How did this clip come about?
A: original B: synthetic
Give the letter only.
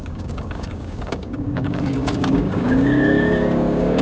B